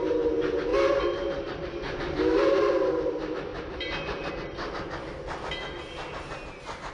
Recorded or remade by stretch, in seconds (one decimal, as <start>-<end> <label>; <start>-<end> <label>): 0.0-0.7 recorded; 0.7-2.7 remade; 2.7-3.5 recorded; 3.5-4.3 remade; 4.3-6.9 recorded